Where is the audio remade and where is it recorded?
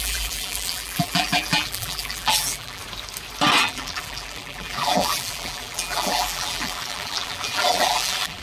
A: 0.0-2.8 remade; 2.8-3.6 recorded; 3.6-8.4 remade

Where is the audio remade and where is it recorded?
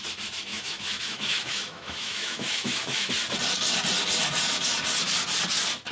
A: 0.0-0.5 recorded; 0.5-3.1 remade; 3.1-5.9 recorded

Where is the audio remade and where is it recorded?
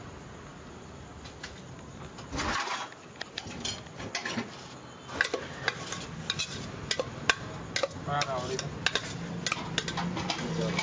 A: 0.0-10.8 recorded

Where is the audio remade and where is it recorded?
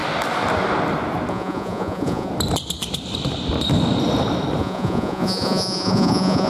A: 0.0-1.3 recorded; 1.3-2.3 remade; 2.3-4.6 recorded; 4.6-6.5 remade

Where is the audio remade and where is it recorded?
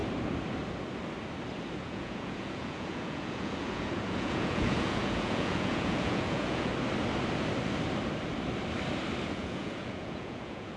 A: 0.0-1.8 recorded; 1.8-6.7 remade; 6.7-9.2 recorded; 9.2-10.8 remade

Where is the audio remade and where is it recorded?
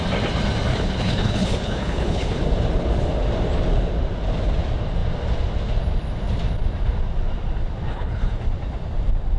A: 0.0-0.7 recorded; 0.7-2.4 remade; 2.4-7.9 recorded; 7.9-8.4 remade; 8.4-9.4 recorded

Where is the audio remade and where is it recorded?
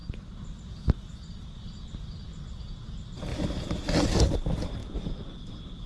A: 0.0-4.8 recorded; 4.8-5.9 remade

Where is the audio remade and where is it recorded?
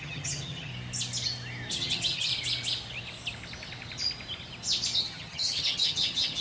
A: 0.0-0.7 remade; 0.7-1.7 recorded; 1.7-2.3 remade; 2.3-5.0 recorded; 5.0-6.4 remade